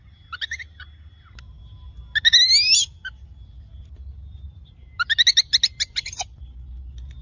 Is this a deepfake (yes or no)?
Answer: no